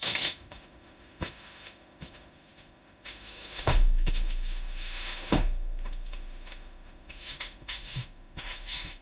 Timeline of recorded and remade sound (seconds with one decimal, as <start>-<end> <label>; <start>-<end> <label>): 0.0-9.0 remade